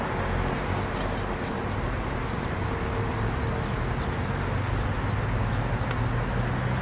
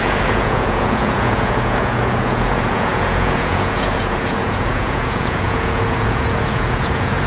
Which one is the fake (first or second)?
second